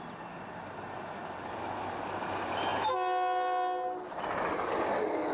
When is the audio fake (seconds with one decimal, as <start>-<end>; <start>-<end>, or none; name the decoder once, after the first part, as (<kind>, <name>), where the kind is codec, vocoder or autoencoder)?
none